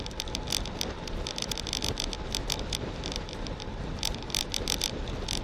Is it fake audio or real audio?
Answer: real